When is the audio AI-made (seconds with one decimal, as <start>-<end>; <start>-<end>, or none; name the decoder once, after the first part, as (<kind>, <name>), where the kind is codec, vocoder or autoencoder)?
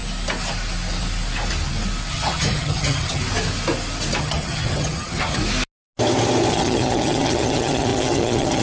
2.1-3.2 (vocoder, HiFi-GAN); 4.2-5.4; 6.5-8.6